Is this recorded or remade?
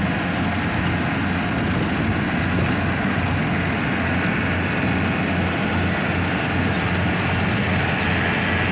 recorded